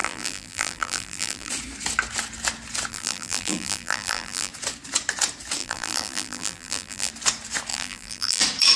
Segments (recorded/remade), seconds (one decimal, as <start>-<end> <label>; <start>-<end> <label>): 0.0-1.5 remade; 1.5-2.9 recorded; 2.9-4.5 remade; 4.5-5.6 recorded; 5.6-7.1 remade; 7.1-7.7 recorded; 7.7-8.4 remade; 8.4-8.8 recorded